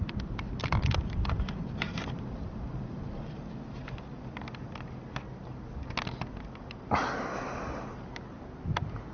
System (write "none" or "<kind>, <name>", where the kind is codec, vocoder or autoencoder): none